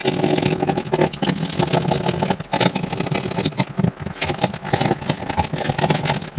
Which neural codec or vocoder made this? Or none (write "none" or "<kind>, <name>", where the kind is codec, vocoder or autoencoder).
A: none